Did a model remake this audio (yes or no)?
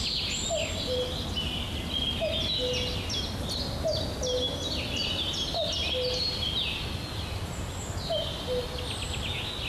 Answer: no